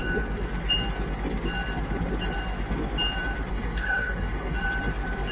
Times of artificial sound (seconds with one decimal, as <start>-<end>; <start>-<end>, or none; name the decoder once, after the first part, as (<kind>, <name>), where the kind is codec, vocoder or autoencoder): 3.5-4.6 (codec, DAC)